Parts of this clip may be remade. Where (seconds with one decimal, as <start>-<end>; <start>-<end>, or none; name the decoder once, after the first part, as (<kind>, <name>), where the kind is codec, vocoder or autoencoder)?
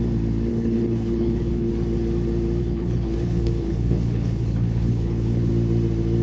0.5-1.7 (codec, HILCodec); 2.6-5.5